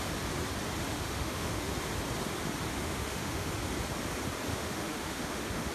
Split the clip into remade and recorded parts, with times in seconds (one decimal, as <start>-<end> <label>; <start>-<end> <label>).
0.0-0.9 recorded; 0.9-1.7 remade; 1.7-2.7 recorded; 2.7-3.5 remade; 3.5-4.5 recorded; 4.5-5.7 remade

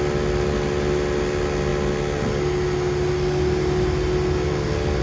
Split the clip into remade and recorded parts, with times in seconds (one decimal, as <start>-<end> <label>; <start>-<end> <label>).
0.0-5.0 recorded

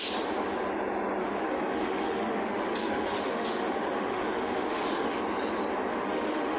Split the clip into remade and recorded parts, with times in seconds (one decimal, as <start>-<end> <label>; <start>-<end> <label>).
0.0-1.2 recorded; 1.2-5.2 remade; 5.2-5.9 recorded; 5.9-6.6 remade

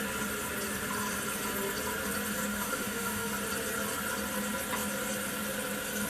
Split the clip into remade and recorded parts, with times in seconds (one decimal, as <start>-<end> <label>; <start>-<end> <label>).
0.0-2.5 recorded; 2.5-3.3 remade; 3.3-6.1 recorded

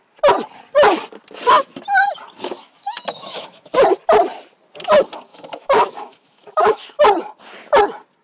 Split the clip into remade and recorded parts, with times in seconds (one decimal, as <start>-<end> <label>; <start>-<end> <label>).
0.0-2.6 recorded; 2.6-3.7 remade; 3.7-5.3 recorded; 5.3-7.0 remade; 7.0-8.2 recorded